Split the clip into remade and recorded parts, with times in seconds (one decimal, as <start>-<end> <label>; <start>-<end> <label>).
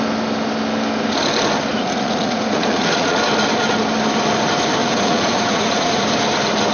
0.0-1.7 recorded; 1.7-3.2 remade; 3.2-4.8 recorded; 4.8-6.0 remade; 6.0-6.7 recorded